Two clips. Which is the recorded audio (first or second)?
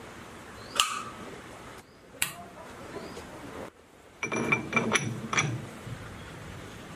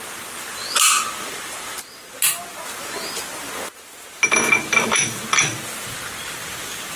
second